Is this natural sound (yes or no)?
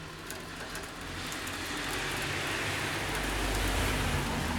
yes